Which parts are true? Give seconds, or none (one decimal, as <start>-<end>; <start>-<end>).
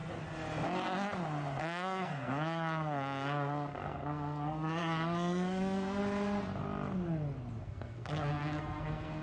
0.0-1.6; 6.0-7.6